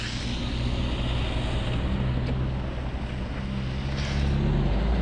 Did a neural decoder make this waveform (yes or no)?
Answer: no